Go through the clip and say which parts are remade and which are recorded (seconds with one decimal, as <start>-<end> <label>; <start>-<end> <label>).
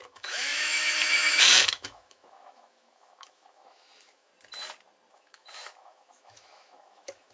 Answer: 0.0-4.3 remade; 4.3-5.1 recorded; 5.1-7.3 remade